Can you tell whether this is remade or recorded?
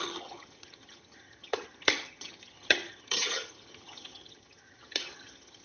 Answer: remade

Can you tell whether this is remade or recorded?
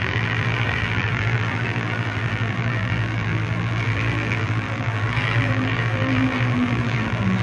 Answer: remade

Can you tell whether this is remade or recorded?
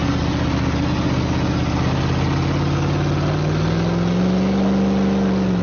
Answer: recorded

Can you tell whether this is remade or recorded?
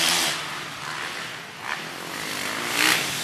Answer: recorded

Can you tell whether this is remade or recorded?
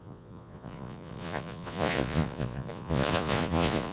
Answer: remade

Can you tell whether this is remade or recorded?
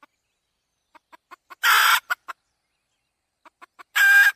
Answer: recorded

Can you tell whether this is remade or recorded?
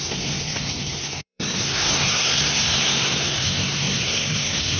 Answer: remade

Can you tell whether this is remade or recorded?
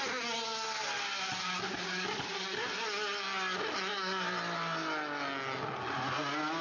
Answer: recorded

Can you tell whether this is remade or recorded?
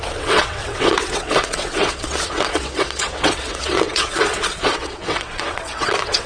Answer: remade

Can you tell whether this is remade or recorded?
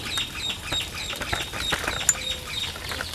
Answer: recorded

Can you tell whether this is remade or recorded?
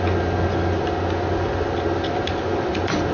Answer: recorded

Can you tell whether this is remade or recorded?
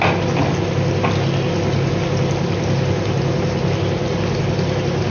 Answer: recorded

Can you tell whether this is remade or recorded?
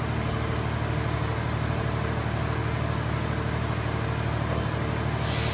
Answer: recorded